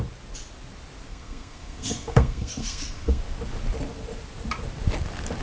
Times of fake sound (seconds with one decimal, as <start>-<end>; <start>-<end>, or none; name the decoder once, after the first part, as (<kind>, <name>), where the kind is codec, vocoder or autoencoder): 1.1-3.2 (codec, SNAC)